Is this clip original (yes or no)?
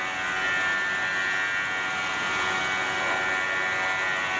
yes